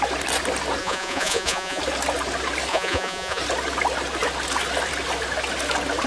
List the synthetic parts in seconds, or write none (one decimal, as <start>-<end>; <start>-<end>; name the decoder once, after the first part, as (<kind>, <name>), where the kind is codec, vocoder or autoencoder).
0.8-1.8 (vocoder, Vocos); 2.7-3.4